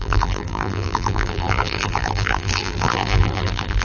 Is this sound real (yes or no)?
no